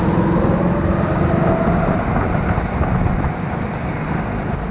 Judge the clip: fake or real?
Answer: real